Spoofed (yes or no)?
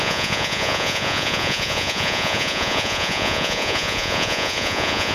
yes